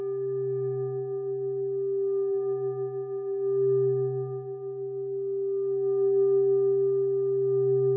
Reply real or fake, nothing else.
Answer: real